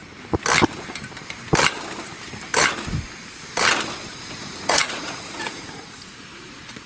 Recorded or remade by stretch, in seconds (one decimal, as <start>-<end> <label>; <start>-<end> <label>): 0.0-4.1 recorded; 4.1-6.9 remade